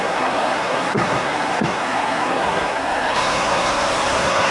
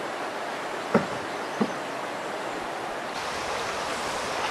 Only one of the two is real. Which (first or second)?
second